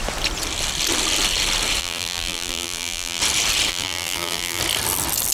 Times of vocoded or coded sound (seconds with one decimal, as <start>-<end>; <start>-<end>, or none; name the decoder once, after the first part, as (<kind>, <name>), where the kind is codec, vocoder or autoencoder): 1.8-3.2 (vocoder, BigVGAN v2); 3.7-4.6